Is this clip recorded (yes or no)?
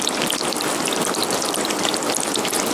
yes